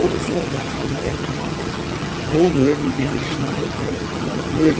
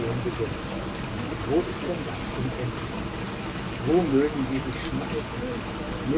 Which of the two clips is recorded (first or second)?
second